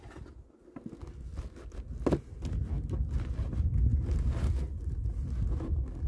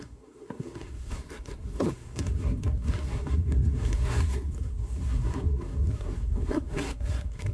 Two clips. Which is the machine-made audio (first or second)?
second